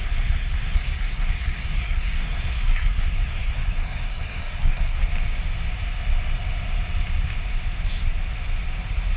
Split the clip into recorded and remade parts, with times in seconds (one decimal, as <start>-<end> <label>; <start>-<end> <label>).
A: 0.0-5.1 remade; 5.1-9.2 recorded